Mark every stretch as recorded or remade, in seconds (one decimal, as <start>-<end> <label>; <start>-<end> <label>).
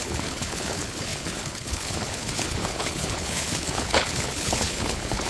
0.0-5.3 remade